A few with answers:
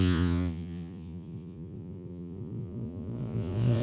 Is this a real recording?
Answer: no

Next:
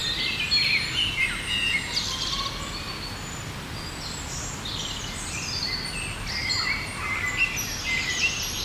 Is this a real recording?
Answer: yes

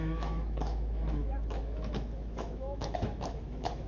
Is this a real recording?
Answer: no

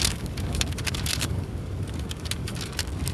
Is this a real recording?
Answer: no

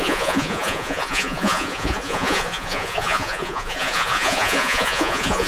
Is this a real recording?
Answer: no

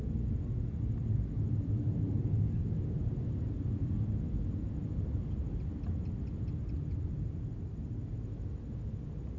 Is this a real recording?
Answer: yes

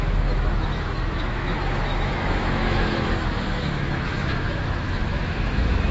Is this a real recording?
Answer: no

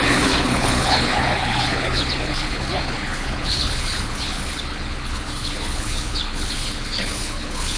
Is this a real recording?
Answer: no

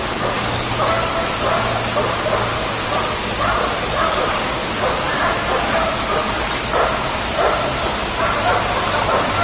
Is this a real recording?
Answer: yes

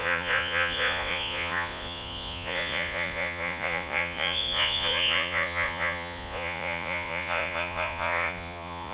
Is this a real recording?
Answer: no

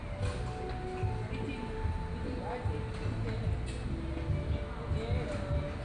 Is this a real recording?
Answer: yes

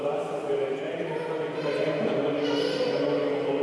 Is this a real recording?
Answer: yes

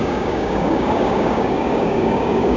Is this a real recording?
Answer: no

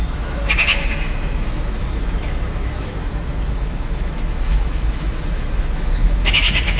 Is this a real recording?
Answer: no